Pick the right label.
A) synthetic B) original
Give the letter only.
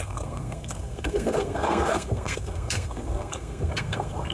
A